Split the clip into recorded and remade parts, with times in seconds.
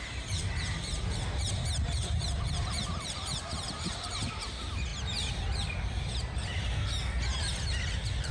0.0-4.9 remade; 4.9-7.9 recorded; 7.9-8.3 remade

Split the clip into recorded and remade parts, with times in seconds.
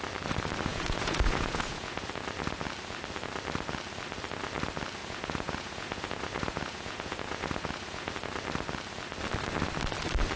0.0-0.7 recorded; 0.7-2.1 remade; 2.1-5.0 recorded; 5.0-8.1 remade; 8.1-10.4 recorded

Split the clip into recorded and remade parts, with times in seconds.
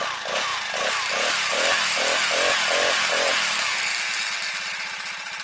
0.0-5.4 recorded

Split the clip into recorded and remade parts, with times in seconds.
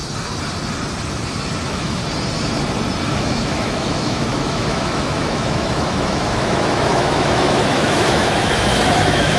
0.0-1.6 recorded; 1.6-2.0 remade; 2.0-3.1 recorded; 3.1-9.4 remade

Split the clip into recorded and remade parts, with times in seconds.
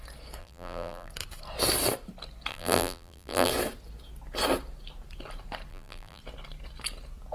0.0-0.4 recorded; 0.4-1.1 remade; 1.1-2.5 recorded; 2.5-3.5 remade; 3.5-5.7 recorded; 5.7-6.2 remade; 6.2-7.3 recorded